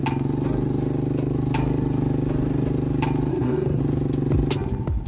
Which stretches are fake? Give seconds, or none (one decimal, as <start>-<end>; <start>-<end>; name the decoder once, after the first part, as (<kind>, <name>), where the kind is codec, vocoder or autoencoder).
3.3-3.8 (codec, SNAC)